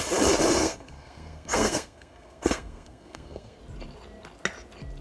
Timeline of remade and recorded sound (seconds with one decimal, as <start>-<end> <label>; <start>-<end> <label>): 0.0-0.6 recorded; 0.6-3.6 remade; 3.6-5.0 recorded